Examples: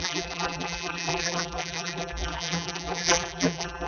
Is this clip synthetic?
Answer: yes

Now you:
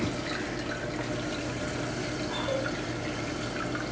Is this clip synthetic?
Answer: no